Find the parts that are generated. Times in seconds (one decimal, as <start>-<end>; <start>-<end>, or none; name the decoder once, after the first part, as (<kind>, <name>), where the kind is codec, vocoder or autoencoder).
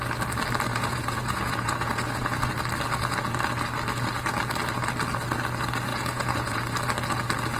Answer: 0.7-2.5 (vocoder, Vocos); 5.9-6.6